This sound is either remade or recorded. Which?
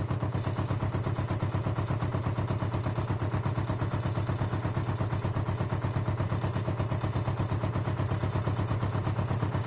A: recorded